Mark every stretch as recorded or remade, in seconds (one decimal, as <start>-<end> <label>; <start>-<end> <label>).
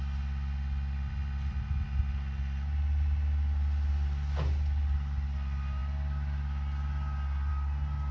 0.0-8.1 recorded